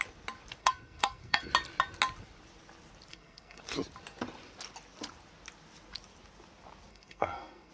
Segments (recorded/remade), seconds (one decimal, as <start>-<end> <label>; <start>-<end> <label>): 0.0-0.6 recorded; 0.6-1.5 remade; 1.5-3.1 recorded; 3.1-3.6 remade; 3.6-6.9 recorded; 6.9-7.7 remade